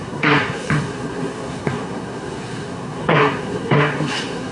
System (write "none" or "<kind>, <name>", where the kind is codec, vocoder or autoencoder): codec, SNAC